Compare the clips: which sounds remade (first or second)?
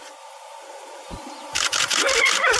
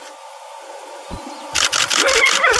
first